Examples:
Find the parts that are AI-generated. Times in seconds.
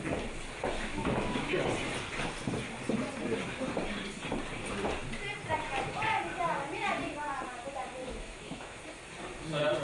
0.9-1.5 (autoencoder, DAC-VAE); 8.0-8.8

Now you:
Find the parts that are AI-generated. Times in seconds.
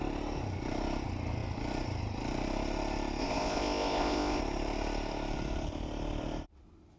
3.2-4.4 (codec, ZipCodec)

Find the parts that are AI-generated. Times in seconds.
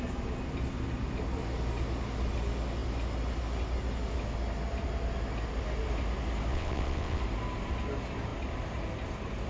6.5-7.2 (vocoder, WaveNeXt)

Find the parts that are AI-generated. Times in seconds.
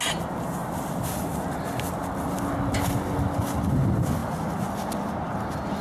none